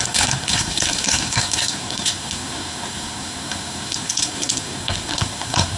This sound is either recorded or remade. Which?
remade